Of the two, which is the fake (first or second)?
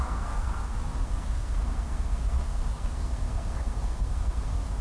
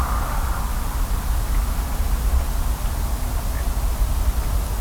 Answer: first